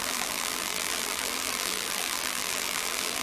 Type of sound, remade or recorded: remade